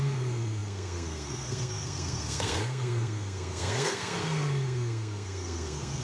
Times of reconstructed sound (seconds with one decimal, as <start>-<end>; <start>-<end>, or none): 0.0-6.0